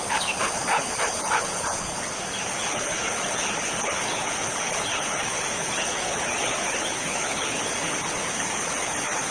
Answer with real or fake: fake